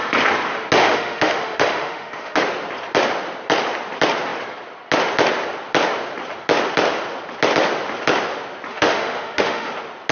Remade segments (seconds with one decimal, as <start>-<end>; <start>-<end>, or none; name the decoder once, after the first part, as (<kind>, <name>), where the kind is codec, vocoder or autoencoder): 0.8-2.4 (autoencoder, DAC-VAE); 8.7-9.7